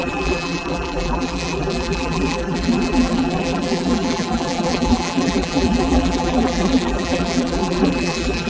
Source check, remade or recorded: remade